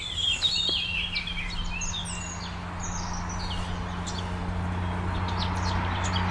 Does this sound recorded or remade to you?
recorded